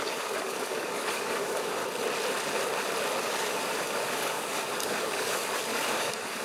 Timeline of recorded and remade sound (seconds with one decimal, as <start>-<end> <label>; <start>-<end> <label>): 0.0-1.8 remade; 1.8-3.2 recorded; 3.2-6.4 remade